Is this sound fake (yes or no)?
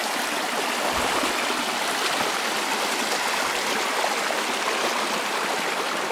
no